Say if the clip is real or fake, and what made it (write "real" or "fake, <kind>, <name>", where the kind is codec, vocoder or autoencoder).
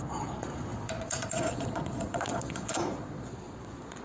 fake, vocoder, Vocos